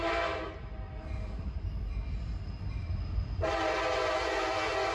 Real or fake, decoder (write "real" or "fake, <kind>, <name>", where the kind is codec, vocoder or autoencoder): real